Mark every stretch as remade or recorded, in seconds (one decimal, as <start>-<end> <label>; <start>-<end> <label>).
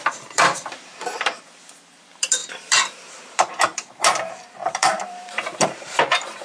0.0-6.4 remade